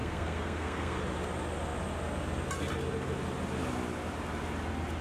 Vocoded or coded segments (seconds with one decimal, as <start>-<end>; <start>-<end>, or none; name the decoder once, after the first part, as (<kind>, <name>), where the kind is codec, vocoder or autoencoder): 0.0-1.0 (codec, SNAC)